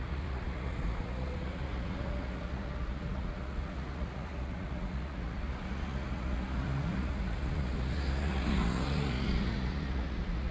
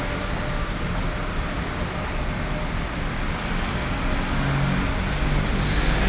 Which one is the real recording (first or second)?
second